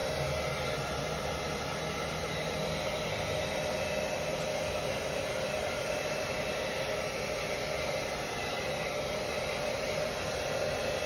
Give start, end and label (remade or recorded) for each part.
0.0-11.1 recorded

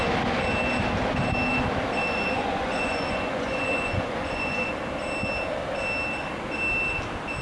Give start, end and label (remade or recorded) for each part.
0.0-2.0 recorded; 2.0-4.7 remade; 4.7-7.4 recorded

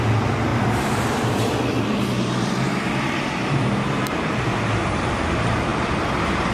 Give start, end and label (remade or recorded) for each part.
0.0-0.5 recorded; 0.5-4.3 remade; 4.3-5.7 recorded; 5.7-6.5 remade

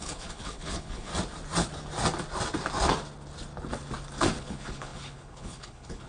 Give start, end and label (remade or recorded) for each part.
0.0-1.1 remade; 1.1-4.4 recorded; 4.4-6.1 remade

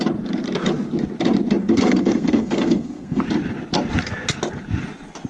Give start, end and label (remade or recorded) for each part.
0.0-1.6 recorded; 1.6-3.2 remade; 3.2-5.3 recorded

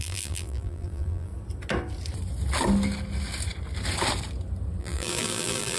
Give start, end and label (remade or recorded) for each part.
0.0-1.3 remade; 1.3-4.8 recorded; 4.8-5.8 remade

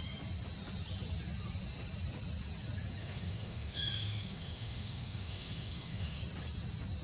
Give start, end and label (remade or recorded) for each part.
0.0-3.0 recorded; 3.0-6.2 remade; 6.2-7.0 recorded

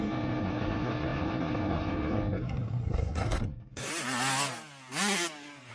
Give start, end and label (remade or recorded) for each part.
0.0-3.9 remade; 3.9-5.7 recorded